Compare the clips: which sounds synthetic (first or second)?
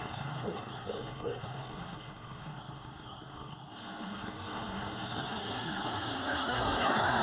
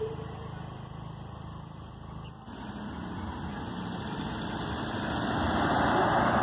first